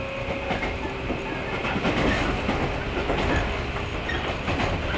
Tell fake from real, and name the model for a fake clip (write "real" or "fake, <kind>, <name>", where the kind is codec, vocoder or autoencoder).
real